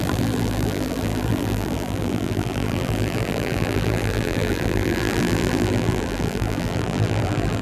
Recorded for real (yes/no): no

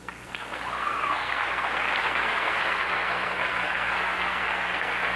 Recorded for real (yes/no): no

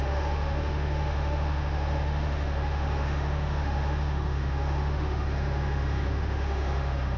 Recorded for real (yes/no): no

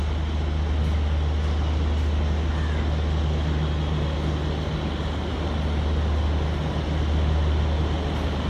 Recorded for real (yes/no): yes